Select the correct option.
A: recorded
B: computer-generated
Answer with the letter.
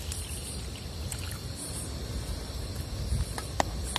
A